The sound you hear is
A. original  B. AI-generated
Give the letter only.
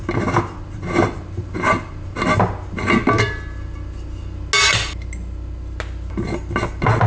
A